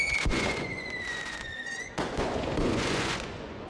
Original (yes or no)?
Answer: no